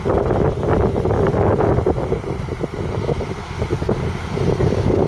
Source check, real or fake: real